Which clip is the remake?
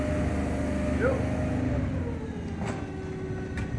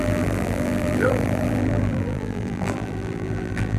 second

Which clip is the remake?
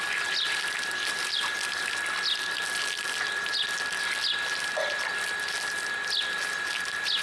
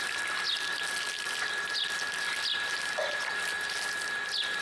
second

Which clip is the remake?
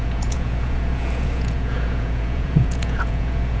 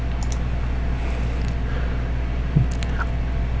first